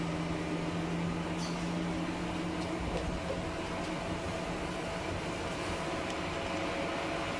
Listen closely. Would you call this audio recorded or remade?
recorded